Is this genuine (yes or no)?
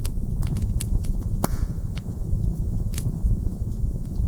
no